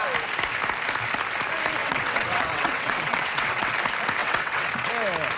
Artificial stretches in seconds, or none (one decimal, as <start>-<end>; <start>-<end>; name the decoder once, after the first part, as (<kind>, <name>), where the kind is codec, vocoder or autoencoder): 1.8-3.7 (vocoder, WaveNeXt); 4.2-4.9